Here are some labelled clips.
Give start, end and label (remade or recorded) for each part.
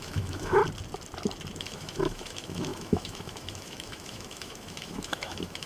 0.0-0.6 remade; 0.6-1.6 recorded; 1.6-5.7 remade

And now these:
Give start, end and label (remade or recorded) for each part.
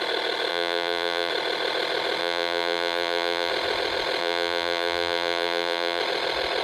0.0-0.5 recorded; 0.5-1.3 remade; 1.3-2.2 recorded; 2.2-3.5 remade; 3.5-4.2 recorded; 4.2-6.0 remade; 6.0-6.6 recorded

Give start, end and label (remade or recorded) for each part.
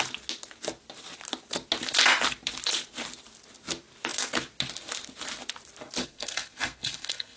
0.0-6.0 recorded; 6.0-7.4 remade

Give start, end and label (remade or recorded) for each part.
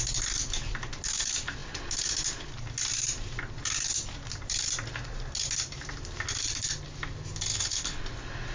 0.0-7.5 recorded; 7.5-8.0 remade; 8.0-8.5 recorded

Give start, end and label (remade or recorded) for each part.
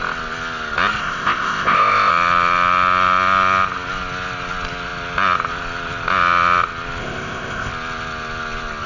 0.0-1.0 recorded; 1.0-2.1 remade; 2.1-7.0 recorded; 7.0-7.7 remade; 7.7-8.9 recorded